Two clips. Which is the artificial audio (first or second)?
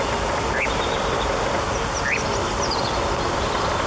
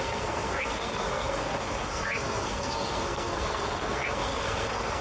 second